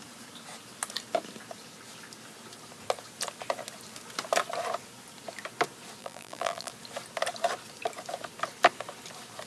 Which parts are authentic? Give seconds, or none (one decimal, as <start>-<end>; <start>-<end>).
0.0-6.0; 6.7-9.5